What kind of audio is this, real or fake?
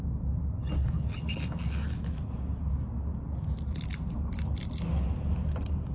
real